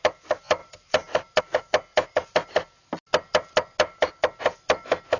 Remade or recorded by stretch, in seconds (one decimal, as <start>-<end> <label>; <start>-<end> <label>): 0.0-0.6 recorded; 0.6-1.4 remade; 1.4-5.2 recorded